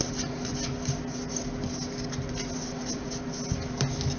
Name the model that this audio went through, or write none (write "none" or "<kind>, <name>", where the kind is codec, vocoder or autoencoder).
none